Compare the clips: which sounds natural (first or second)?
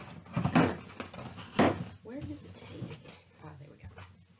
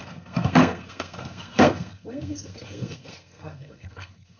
first